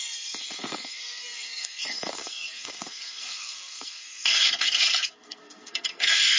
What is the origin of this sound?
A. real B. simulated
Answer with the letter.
B